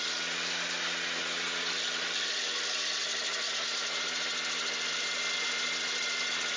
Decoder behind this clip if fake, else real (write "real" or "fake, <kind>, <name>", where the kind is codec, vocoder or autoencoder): real